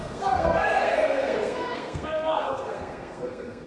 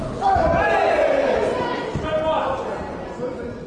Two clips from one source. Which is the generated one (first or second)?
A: first